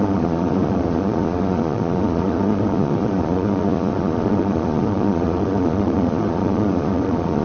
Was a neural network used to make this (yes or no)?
yes